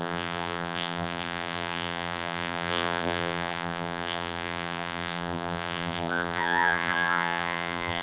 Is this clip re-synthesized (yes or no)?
yes